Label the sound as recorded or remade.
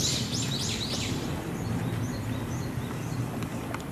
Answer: recorded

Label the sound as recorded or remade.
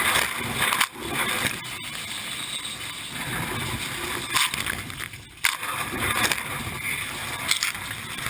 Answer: recorded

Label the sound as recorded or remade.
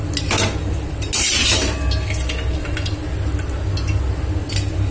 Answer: recorded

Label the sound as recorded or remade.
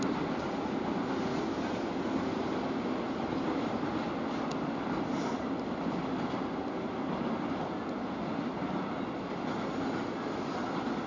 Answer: recorded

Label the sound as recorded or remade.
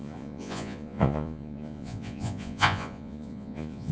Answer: remade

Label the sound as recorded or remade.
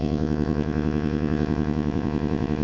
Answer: remade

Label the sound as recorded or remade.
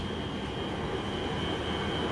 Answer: recorded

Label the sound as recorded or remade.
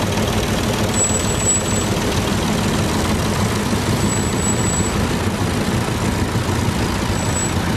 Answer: recorded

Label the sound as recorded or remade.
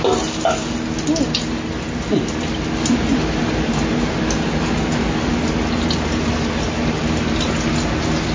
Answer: recorded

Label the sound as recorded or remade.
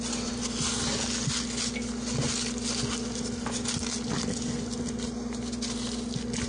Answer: recorded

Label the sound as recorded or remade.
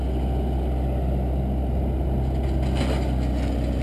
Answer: recorded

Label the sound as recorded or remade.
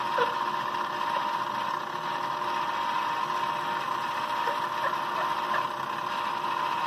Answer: recorded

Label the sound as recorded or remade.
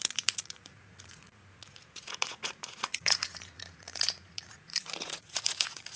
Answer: remade